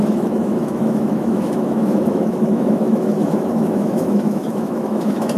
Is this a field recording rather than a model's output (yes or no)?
no